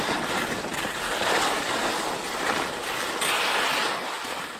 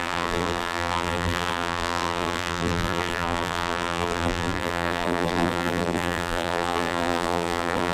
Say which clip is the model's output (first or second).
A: second